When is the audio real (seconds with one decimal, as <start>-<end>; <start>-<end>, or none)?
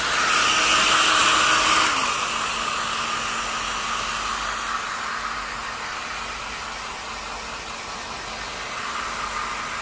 0.0-9.8